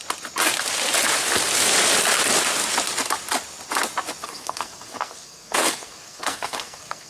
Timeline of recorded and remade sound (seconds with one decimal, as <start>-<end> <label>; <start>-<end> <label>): 0.0-4.2 recorded; 4.2-7.1 remade